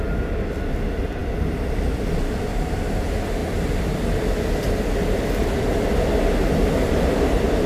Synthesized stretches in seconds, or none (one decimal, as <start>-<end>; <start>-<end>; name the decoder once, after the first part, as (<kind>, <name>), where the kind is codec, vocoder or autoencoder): none